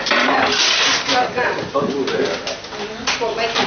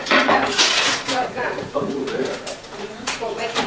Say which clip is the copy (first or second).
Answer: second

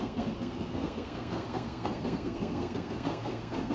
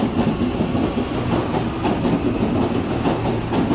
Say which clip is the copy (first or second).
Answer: first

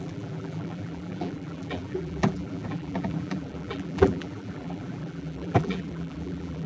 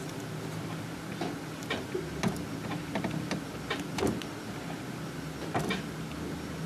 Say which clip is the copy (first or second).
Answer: first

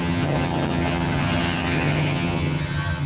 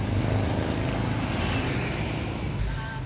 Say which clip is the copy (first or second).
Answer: first